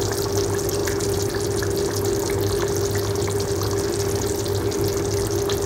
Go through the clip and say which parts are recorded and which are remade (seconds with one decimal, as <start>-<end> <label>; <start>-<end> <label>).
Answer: 0.0-5.7 recorded